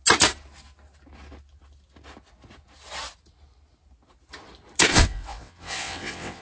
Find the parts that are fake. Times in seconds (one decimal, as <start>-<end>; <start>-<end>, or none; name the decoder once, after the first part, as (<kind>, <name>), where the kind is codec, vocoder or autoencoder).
4.9-6.4 (vocoder, WaveNeXt)